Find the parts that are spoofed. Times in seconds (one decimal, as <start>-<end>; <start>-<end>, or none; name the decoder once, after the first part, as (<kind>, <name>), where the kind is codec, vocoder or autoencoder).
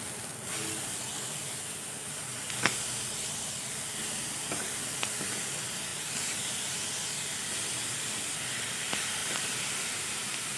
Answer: 5.9-6.6 (vocoder, BigVGAN v2); 9.2-10.0